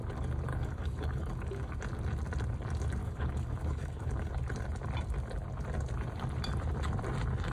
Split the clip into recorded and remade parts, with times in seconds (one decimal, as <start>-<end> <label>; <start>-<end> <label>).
0.0-0.5 recorded; 0.5-1.7 remade; 1.7-3.0 recorded; 3.0-4.3 remade; 4.3-7.5 recorded